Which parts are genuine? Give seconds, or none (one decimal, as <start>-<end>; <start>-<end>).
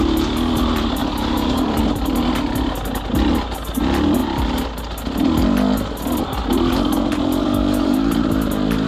0.0-1.0; 1.8-7.4; 8.1-8.9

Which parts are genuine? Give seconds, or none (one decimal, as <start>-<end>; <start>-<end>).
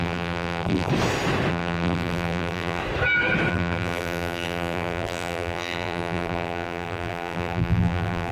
0.9-1.5; 2.8-3.5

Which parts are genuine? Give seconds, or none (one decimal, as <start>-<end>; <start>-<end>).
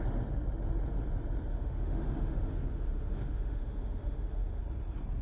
0.0-1.5; 4.6-5.2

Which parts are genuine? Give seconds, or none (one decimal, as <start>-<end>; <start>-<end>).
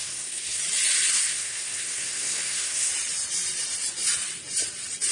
0.6-1.1; 2.9-5.1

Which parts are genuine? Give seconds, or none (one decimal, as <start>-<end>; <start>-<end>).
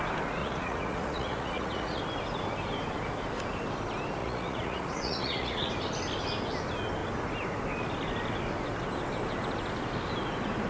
0.0-0.4; 2.0-4.2; 5.7-10.7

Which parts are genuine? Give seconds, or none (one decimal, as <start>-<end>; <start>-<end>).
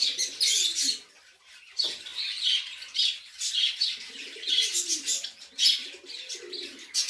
0.0-5.8; 6.4-7.1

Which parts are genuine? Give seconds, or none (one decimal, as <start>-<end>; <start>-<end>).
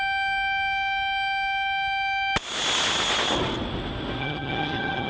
0.0-4.2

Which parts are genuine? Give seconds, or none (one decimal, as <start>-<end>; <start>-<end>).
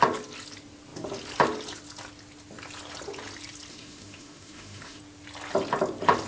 0.0-3.7; 5.0-6.3